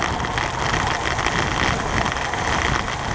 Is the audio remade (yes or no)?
no